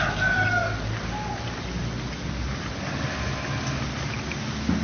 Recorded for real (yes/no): yes